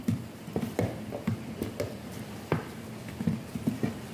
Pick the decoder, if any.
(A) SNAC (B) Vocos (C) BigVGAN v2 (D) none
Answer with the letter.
C